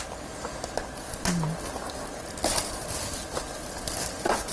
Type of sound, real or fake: real